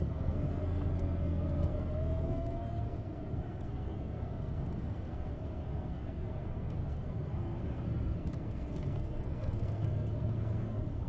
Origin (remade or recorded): remade